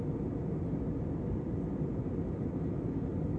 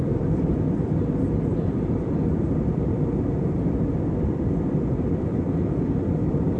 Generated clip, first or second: second